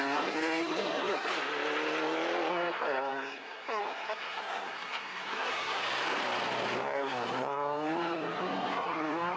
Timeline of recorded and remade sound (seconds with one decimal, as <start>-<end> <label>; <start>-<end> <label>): 0.0-1.3 remade; 1.3-2.5 recorded; 2.5-5.8 remade; 5.8-6.8 recorded; 6.8-9.4 remade